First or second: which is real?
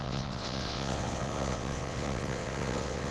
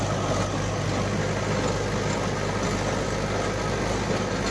second